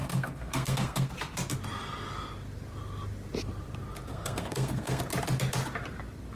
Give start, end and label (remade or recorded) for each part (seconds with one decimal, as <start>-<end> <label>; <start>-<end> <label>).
0.0-1.1 remade; 1.1-4.1 recorded; 4.1-5.0 remade; 5.0-6.4 recorded